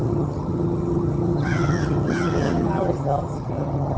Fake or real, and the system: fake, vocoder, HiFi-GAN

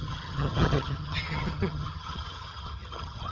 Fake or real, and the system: fake, vocoder, HiFi-GAN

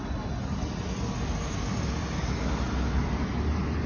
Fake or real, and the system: real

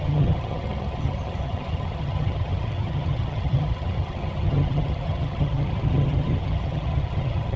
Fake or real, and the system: fake, vocoder, HiFi-GAN